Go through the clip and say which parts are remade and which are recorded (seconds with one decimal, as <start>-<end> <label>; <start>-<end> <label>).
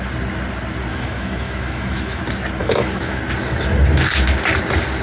0.0-0.9 recorded; 0.9-2.2 remade; 2.2-2.6 recorded; 2.6-3.2 remade; 3.2-5.0 recorded